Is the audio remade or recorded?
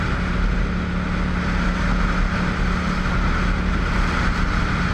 recorded